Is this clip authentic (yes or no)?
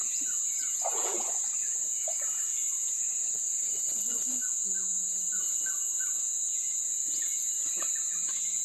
no